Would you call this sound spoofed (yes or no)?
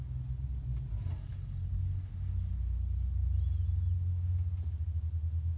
no